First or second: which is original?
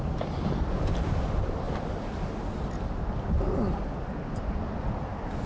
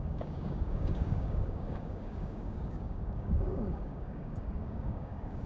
first